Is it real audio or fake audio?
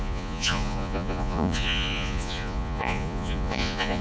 fake